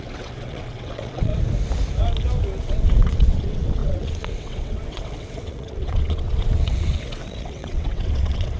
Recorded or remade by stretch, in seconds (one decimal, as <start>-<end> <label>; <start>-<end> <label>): 0.0-1.3 remade; 1.3-2.6 recorded; 2.6-8.6 remade